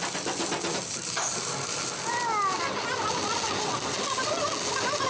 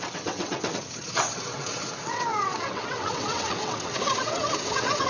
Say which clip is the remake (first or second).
second